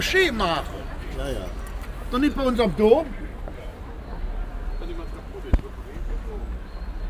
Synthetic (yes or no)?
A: no